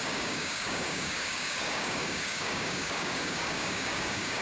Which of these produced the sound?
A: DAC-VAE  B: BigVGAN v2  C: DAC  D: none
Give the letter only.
C